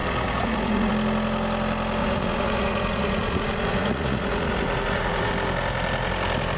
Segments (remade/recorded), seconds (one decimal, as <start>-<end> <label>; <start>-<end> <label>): 0.0-0.9 remade; 0.9-2.0 recorded; 2.0-5.3 remade; 5.3-6.6 recorded

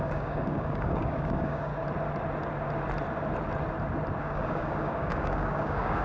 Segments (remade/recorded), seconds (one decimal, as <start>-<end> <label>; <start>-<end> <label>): 0.0-1.7 remade; 1.7-4.2 recorded; 4.2-6.0 remade